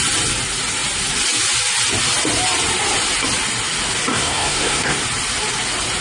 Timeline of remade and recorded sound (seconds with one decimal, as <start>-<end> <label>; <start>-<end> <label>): 0.0-4.1 recorded; 4.1-5.0 remade; 5.0-6.0 recorded